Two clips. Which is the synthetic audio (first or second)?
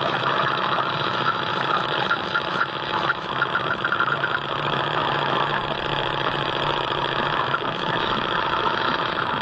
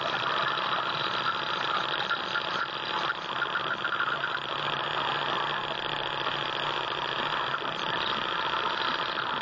first